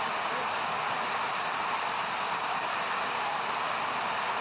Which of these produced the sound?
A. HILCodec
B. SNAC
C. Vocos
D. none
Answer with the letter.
D